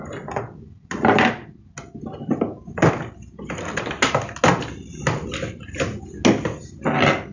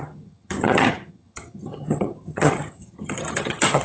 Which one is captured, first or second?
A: first